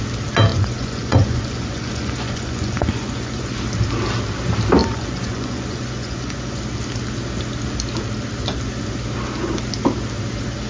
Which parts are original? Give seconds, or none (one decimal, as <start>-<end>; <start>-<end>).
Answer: 0.0-0.5; 3.6-4.8; 6.6-10.7